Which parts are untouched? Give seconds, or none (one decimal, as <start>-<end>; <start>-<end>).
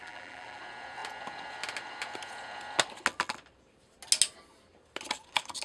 0.6-5.6